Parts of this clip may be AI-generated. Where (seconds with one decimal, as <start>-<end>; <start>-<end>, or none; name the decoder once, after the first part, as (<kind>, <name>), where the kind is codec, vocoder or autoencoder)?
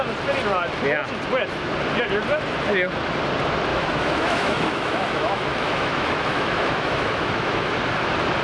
3.7-7.7 (autoencoder, DAC-VAE)